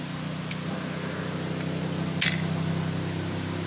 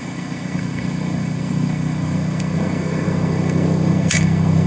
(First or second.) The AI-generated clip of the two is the second